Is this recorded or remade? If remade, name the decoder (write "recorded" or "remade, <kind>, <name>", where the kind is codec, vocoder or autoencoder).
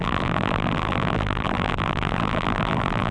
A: remade, vocoder, BigVGAN v2